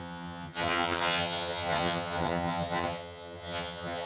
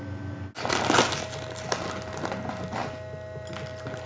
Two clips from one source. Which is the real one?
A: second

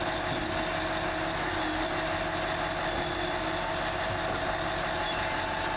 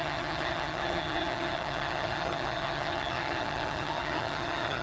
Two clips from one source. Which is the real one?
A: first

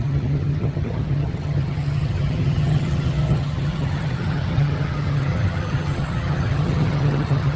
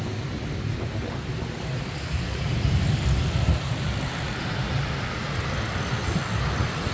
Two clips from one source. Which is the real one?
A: second